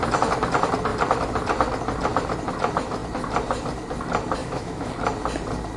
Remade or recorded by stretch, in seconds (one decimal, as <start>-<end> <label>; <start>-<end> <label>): 0.0-4.4 recorded; 4.4-4.9 remade; 4.9-5.8 recorded